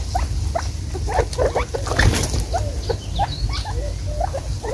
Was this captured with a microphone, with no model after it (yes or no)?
yes